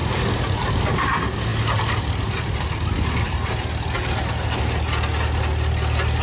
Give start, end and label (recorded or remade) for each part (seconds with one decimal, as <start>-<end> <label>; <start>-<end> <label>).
0.0-6.2 recorded